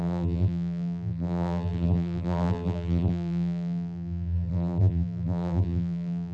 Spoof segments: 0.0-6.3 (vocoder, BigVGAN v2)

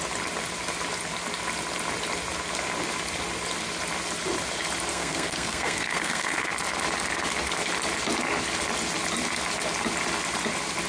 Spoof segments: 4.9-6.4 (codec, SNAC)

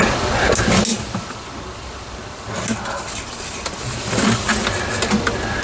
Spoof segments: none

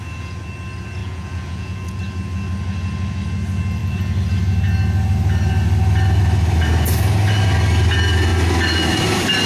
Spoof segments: 1.0-2.0 (vocoder, Vocos)

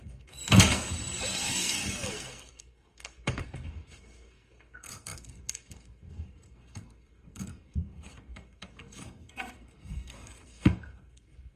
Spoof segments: 0.0-11.6 (codec, SNAC)

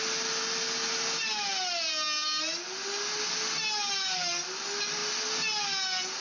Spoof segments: none

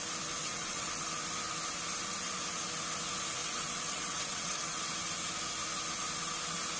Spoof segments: 0.4-0.9 (vocoder, WaveNeXt); 3.4-4.8